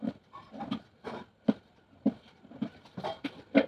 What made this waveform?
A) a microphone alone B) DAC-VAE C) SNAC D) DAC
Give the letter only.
A